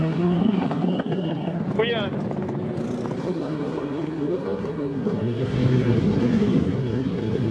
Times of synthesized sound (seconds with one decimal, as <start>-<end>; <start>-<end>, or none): 0.0-1.6; 3.2-7.5